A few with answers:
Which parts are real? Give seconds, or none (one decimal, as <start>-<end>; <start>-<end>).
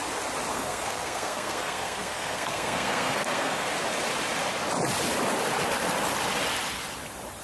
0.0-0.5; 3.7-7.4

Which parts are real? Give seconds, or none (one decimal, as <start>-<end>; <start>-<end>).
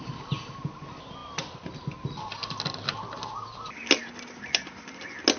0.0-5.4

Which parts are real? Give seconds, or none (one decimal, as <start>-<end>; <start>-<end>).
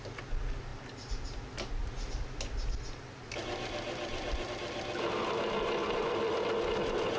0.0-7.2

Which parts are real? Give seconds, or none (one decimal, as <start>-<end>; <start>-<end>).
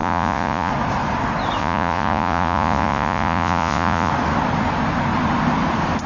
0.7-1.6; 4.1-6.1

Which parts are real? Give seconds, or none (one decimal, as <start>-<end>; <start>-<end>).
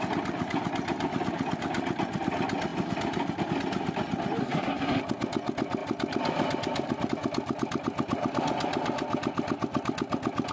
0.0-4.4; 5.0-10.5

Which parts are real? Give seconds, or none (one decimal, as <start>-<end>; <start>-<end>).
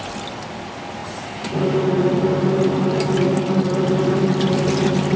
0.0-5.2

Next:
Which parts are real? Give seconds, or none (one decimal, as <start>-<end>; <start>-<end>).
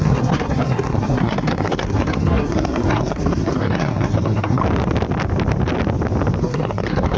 4.6-6.4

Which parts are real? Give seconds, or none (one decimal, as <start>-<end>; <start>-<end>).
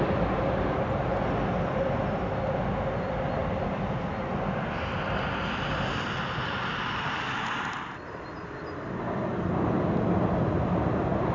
0.0-11.3